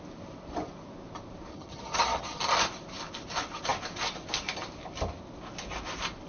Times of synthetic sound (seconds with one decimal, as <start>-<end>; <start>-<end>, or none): 1.5-2.4